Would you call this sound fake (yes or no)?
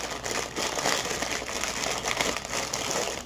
no